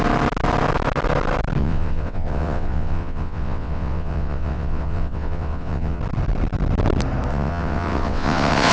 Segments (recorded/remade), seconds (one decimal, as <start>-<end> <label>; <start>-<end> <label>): 0.0-1.6 recorded; 1.6-6.0 remade; 6.0-7.3 recorded; 7.3-8.7 remade